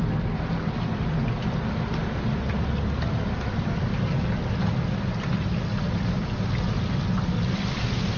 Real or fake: real